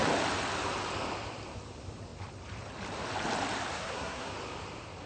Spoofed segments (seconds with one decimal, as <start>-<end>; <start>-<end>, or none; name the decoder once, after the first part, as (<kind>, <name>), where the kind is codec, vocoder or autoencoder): 3.7-4.3 (codec, SNAC)